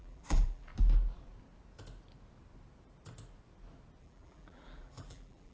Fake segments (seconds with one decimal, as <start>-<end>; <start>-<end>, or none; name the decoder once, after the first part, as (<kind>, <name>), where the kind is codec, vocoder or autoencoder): 0.0-0.7 (vocoder, BigVGAN v2); 4.0-5.5